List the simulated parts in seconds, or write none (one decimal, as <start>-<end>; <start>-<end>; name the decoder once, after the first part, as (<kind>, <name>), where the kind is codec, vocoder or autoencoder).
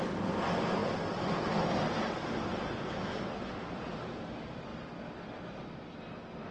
none